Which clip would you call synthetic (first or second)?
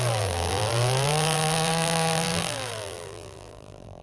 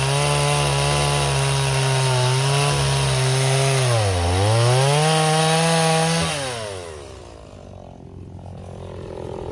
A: first